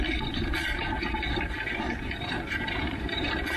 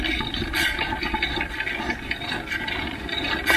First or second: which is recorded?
second